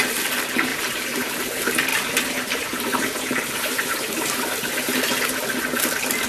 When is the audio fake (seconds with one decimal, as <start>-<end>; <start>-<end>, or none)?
0.7-1.4; 1.9-4.1